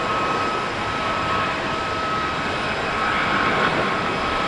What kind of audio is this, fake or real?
fake